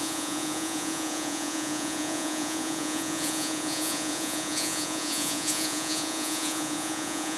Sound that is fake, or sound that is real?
fake